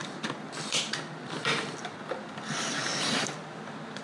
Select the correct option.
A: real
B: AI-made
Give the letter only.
B